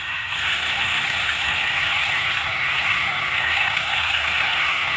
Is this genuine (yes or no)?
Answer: no